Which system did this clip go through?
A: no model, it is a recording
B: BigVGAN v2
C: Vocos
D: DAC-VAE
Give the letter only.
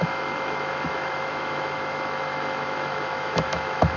D